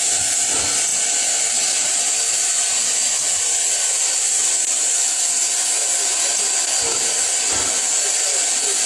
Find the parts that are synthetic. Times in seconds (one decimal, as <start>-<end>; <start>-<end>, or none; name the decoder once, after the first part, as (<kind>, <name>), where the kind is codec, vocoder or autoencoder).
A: none